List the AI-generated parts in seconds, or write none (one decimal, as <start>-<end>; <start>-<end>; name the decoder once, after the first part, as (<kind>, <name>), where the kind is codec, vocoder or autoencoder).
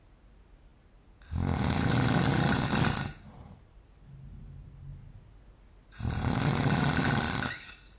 none